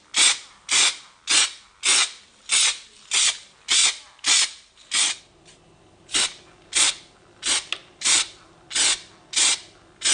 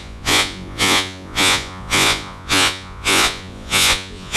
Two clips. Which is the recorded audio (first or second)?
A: first